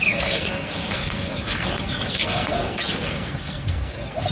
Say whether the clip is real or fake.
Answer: fake